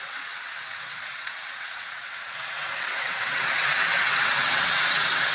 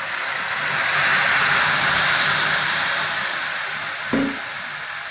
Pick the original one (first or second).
second